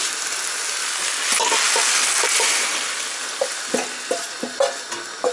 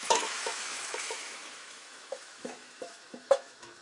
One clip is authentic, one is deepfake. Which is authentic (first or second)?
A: first